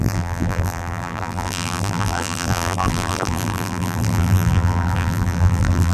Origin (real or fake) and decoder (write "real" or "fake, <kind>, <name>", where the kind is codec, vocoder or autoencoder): fake, vocoder, BigVGAN v2